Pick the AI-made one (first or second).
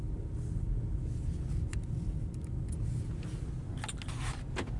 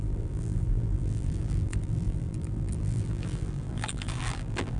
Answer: second